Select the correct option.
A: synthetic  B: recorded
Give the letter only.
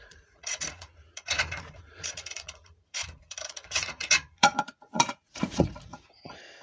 A